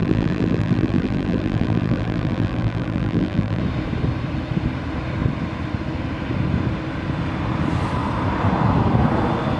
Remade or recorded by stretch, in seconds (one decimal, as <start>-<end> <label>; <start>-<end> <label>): 0.0-3.6 remade; 3.6-9.6 recorded